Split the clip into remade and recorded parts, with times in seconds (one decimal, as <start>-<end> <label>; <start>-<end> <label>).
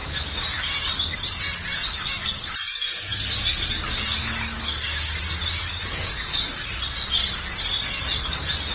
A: 0.0-4.2 recorded; 4.2-5.0 remade; 5.0-5.9 recorded; 5.9-6.5 remade; 6.5-8.7 recorded